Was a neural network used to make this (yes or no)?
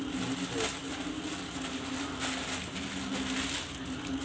no